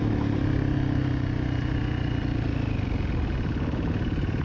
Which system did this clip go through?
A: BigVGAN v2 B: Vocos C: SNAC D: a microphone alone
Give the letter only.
D